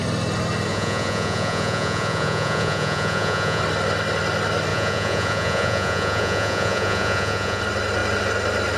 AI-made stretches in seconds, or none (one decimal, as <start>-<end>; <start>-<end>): 0.7-3.6; 4.7-7.6